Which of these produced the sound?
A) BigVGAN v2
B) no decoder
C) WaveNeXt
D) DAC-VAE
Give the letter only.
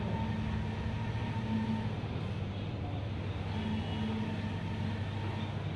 B